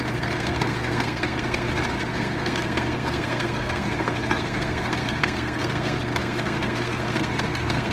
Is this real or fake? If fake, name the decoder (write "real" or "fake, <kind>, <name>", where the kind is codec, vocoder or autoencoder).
fake, codec, SNAC